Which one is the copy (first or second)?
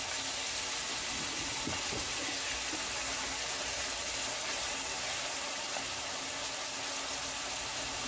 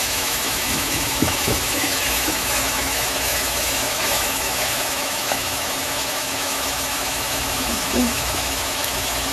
second